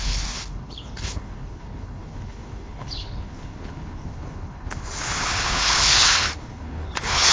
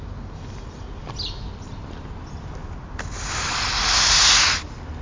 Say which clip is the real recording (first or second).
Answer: second